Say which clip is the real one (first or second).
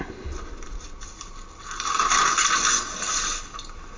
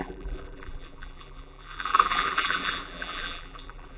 first